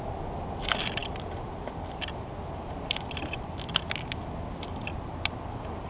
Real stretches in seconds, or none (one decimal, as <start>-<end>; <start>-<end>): 0.0-5.9